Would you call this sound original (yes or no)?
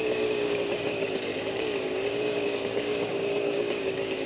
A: no